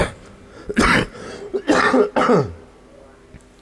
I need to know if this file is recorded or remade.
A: recorded